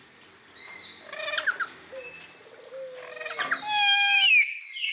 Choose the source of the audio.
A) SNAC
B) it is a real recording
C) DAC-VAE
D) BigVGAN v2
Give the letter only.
B